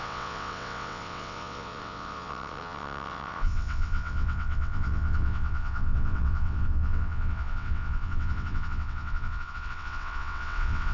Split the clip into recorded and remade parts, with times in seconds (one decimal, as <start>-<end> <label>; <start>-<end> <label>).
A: 0.0-10.9 remade